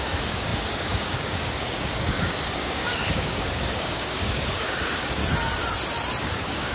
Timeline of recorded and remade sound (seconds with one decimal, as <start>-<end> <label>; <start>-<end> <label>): 0.0-5.2 remade; 5.2-6.2 recorded; 6.2-6.7 remade